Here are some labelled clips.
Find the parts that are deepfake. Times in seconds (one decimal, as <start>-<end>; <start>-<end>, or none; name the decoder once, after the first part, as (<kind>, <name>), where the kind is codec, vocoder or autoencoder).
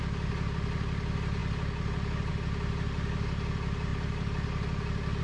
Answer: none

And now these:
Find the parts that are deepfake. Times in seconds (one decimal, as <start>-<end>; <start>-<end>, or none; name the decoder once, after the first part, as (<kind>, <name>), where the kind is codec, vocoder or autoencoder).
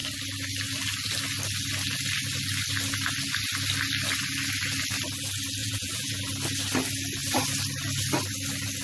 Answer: 5.6-6.2 (vocoder, Vocos)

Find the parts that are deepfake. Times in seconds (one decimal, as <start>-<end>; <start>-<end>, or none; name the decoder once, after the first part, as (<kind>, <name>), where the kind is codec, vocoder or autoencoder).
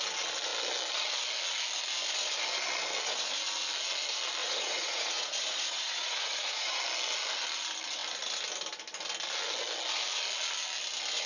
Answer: 4.4-6.8 (vocoder, Vocos)